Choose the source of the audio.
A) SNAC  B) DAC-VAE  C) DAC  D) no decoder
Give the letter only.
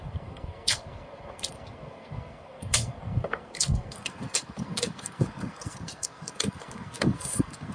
A